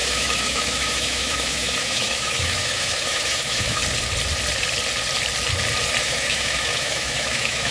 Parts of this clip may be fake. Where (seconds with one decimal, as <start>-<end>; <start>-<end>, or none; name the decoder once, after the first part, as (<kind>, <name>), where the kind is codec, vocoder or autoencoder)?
0.0-3.8 (autoencoder, DAC-VAE); 6.0-7.7